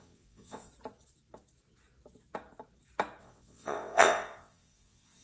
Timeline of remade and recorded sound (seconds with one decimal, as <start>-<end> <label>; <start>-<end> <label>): 0.0-0.7 remade; 0.7-3.2 recorded; 3.2-5.2 remade